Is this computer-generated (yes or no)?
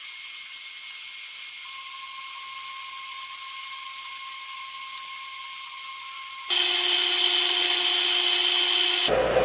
no